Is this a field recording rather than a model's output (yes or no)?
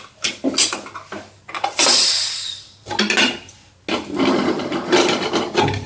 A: yes